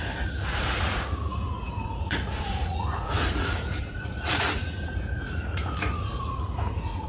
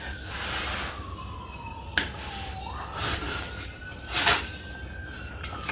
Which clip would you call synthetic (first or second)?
first